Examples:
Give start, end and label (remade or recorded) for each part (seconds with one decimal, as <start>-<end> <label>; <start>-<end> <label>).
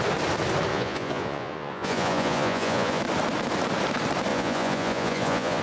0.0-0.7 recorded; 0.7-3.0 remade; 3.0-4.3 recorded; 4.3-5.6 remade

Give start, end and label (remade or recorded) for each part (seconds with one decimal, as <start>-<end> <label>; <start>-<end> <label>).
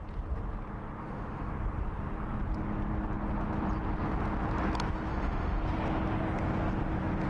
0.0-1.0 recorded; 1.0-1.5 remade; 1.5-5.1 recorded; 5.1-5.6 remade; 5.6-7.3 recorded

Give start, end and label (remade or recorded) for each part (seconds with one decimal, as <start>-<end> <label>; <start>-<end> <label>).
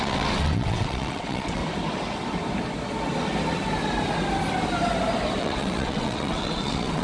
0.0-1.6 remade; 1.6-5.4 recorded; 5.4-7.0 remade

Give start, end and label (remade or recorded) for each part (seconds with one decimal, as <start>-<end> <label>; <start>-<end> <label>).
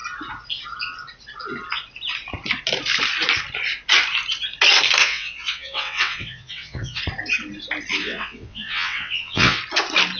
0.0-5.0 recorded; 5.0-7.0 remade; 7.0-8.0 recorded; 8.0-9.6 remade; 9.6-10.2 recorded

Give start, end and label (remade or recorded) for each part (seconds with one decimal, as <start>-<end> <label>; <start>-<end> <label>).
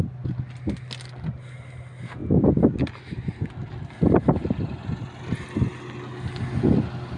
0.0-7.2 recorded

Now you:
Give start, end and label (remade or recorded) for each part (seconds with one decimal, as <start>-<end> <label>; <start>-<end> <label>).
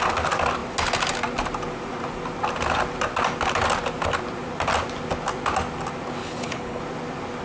0.0-6.2 recorded; 6.2-6.8 remade; 6.8-7.4 recorded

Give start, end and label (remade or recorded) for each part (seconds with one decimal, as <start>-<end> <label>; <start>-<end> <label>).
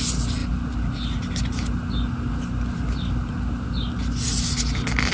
0.0-5.1 recorded